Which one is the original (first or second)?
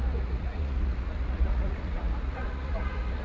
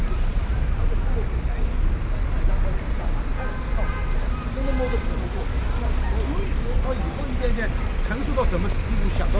second